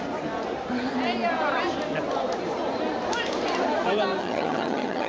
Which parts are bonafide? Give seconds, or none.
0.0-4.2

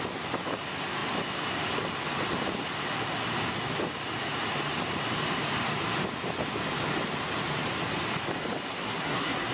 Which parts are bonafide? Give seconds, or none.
0.0-8.7

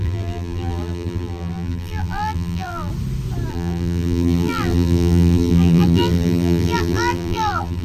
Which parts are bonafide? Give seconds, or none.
2.9-3.5

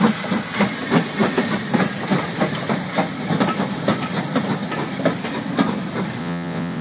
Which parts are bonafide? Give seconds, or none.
0.0-6.2

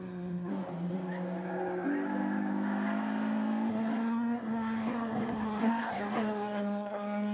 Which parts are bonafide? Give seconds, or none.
0.5-3.7

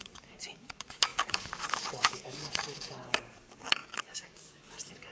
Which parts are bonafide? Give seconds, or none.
none

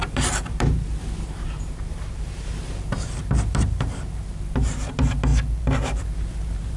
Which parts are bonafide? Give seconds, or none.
5.3-6.0

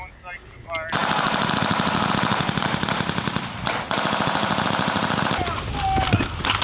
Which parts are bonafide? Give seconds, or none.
0.0-6.6